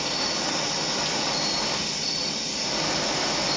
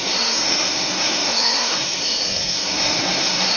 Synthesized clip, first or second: second